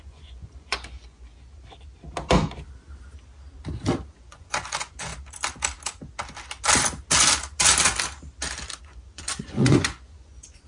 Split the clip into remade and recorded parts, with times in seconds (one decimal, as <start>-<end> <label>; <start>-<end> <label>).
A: 0.0-1.3 remade; 1.3-4.1 recorded; 4.1-5.1 remade; 5.1-8.8 recorded; 8.8-10.7 remade